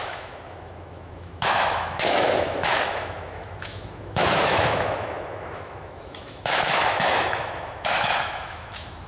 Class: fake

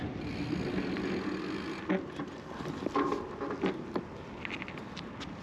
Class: real